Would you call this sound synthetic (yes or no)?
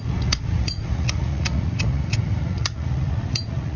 yes